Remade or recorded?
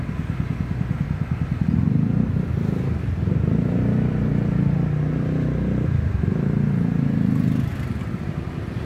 recorded